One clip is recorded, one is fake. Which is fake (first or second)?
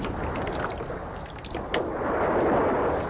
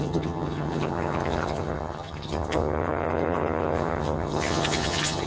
second